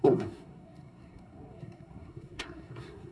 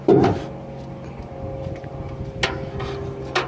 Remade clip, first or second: first